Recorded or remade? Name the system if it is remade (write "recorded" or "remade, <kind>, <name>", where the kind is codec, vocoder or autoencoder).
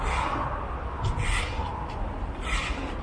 recorded